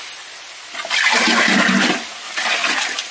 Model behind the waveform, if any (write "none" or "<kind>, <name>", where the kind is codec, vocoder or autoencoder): none